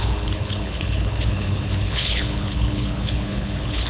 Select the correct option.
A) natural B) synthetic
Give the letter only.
B